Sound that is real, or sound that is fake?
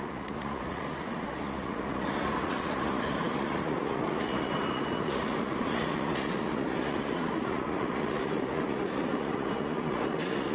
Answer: fake